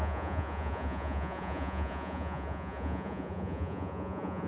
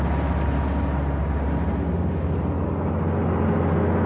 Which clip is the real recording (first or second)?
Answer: second